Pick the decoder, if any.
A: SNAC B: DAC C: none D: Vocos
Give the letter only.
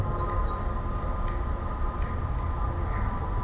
C